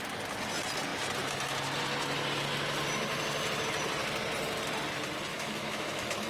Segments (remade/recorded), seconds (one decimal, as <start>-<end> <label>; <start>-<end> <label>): 0.0-5.3 recorded; 5.3-6.3 remade